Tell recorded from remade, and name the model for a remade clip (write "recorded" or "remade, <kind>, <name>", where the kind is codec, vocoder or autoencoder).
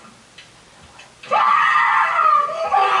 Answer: recorded